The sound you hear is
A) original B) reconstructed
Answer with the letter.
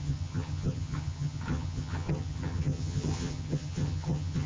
B